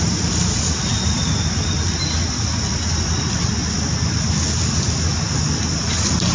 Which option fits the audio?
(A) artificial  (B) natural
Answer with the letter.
B